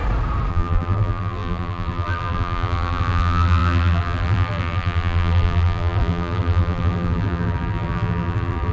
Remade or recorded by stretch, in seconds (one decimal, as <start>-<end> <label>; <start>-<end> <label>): 0.0-0.5 recorded; 0.5-8.7 remade